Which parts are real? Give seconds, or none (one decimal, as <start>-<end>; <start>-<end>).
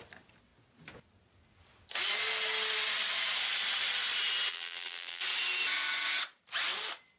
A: 0.0-4.5; 5.2-7.2